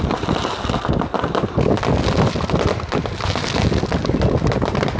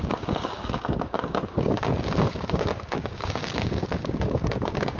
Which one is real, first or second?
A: first